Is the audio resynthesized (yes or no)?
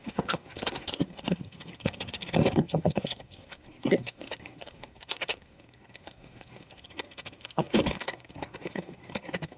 yes